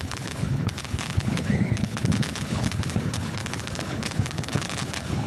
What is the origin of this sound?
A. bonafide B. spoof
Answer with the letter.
B